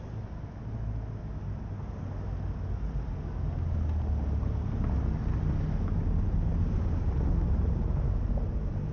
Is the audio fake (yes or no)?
no